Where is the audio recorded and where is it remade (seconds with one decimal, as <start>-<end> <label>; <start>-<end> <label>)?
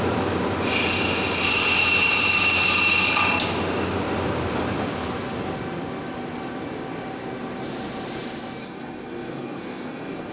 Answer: 0.0-8.6 recorded; 8.6-10.3 remade